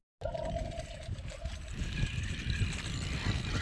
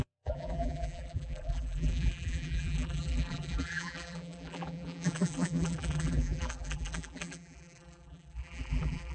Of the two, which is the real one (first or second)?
first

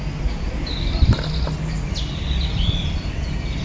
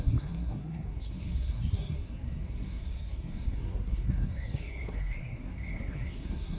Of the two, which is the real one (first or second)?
first